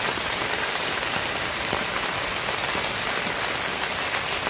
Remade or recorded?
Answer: recorded